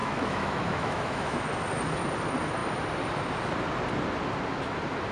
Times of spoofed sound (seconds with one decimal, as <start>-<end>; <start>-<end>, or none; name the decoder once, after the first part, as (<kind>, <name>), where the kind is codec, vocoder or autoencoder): 0.0-1.4 (autoencoder, DAC-VAE)